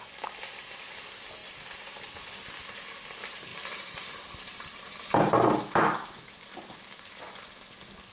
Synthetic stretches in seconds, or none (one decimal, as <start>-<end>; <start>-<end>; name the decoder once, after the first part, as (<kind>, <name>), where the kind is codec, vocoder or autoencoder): 3.5-5.8 (vocoder, BigVGAN v2)